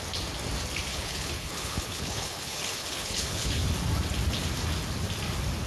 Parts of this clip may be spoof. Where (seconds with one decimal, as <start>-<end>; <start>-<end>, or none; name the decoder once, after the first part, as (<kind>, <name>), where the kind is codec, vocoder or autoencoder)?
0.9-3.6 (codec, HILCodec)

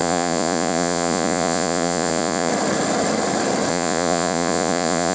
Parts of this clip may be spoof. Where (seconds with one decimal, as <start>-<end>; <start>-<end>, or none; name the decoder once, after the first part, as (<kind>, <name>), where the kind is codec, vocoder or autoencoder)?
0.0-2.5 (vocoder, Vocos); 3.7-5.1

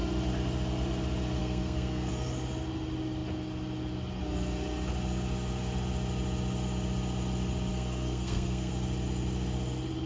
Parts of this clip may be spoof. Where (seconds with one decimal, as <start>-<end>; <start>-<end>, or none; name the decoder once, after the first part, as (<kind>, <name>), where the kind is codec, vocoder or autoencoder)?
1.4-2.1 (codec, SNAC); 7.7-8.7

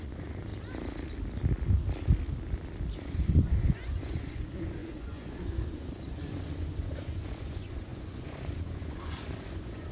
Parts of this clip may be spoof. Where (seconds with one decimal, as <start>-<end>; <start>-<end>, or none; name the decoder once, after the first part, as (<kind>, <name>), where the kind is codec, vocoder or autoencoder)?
0.0-0.5 (vocoder, Vocos); 3.0-9.9

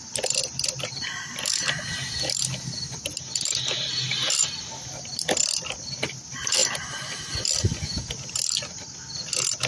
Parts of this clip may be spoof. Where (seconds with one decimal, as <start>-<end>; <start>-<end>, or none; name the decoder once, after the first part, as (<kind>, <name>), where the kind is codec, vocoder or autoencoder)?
none